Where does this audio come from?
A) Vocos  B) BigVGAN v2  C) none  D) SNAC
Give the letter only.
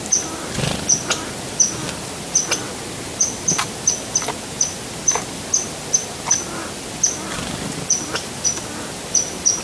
C